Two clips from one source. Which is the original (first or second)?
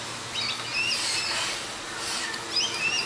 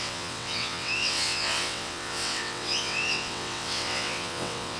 first